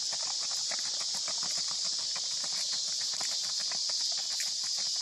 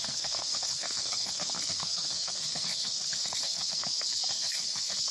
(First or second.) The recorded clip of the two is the first